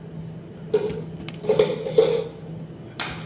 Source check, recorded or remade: recorded